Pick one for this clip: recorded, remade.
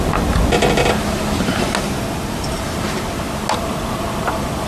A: recorded